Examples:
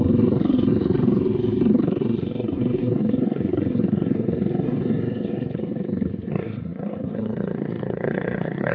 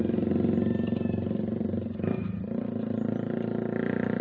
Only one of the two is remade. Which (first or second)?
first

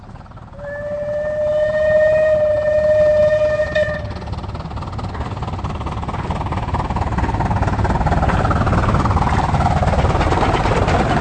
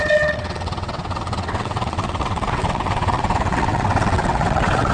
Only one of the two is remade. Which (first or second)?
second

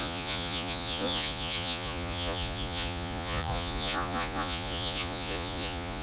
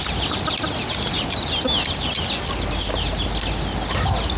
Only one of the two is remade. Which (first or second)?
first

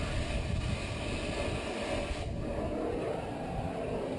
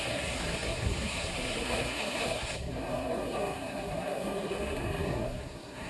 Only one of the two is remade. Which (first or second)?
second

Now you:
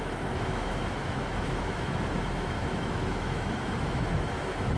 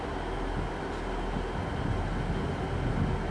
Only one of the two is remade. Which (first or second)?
first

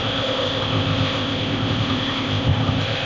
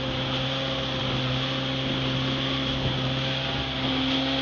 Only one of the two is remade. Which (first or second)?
first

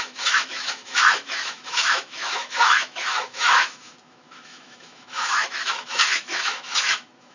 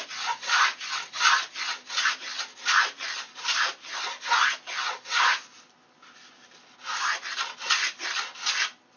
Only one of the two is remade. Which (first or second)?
first